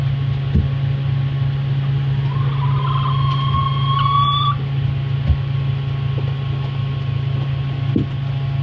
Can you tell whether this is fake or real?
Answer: real